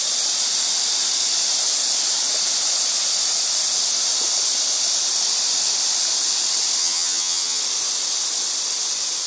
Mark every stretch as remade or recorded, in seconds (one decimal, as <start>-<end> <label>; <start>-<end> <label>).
0.0-6.8 recorded; 6.8-7.6 remade; 7.6-9.3 recorded